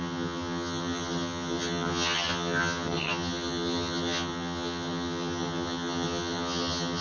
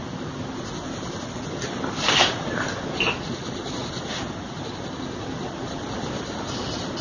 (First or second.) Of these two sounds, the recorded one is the second